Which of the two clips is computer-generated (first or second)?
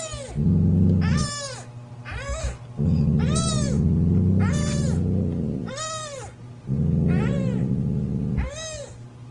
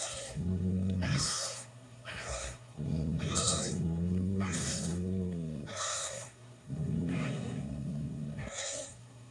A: second